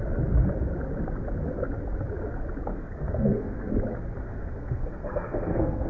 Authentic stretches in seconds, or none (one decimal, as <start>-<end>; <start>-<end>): 0.0-2.7; 3.7-4.2